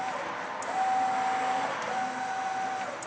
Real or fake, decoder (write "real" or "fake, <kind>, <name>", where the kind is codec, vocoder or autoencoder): real